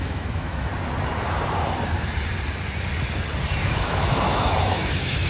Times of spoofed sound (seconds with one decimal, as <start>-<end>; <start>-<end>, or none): 0.0-0.7; 3.7-5.3